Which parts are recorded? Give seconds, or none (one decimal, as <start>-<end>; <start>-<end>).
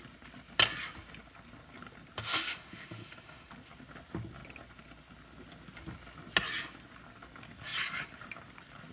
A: 0.0-2.2; 3.5-8.9